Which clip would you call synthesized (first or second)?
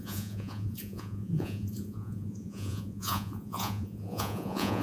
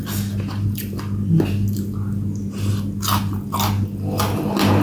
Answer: first